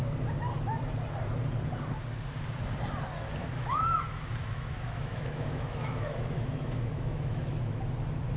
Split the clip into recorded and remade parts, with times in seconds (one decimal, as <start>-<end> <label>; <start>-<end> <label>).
0.0-3.4 recorded; 3.4-7.8 remade; 7.8-8.4 recorded